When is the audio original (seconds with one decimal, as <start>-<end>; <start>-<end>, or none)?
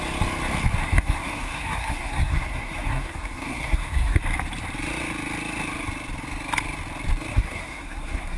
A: 0.0-0.8; 4.2-7.3